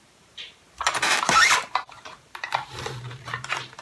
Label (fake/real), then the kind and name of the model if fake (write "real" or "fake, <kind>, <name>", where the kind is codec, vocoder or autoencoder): fake, vocoder, BigVGAN v2